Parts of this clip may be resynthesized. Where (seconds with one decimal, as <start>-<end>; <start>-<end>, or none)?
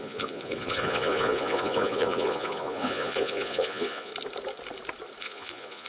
0.0-4.1; 5.2-5.9